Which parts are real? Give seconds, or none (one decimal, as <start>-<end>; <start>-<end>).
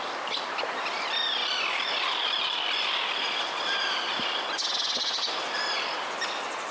0.0-6.7